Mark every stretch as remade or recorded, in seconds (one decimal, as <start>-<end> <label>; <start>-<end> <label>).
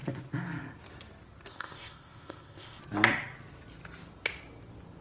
0.0-1.5 recorded; 1.5-2.8 remade; 2.8-5.0 recorded